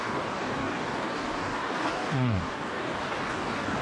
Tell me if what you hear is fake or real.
fake